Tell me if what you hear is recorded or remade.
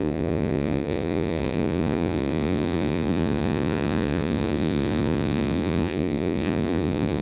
remade